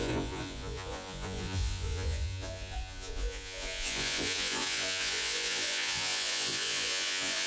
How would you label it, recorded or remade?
remade